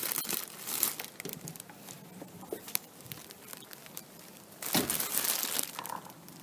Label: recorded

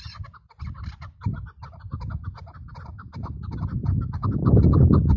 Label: recorded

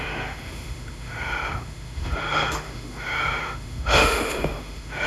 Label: remade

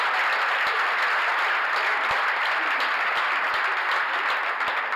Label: recorded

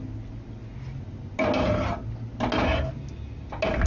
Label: recorded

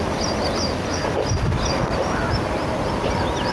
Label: remade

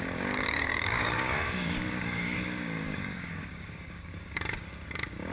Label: remade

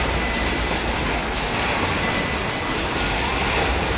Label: recorded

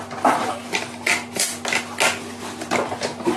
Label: recorded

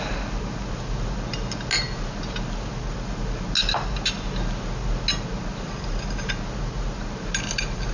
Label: recorded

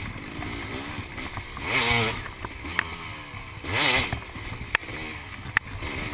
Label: recorded